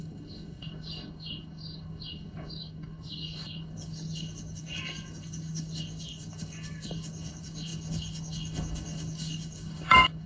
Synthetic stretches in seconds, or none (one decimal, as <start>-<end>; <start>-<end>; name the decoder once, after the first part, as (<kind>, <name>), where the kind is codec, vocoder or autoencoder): 0.0-10.3 (codec, DAC)